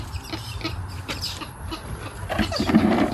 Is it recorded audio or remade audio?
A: remade